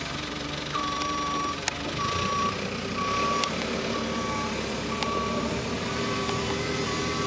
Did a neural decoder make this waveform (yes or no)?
yes